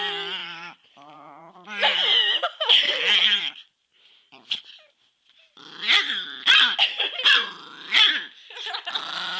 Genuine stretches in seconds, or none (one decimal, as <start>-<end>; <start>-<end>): 0.0-0.4; 3.4-9.4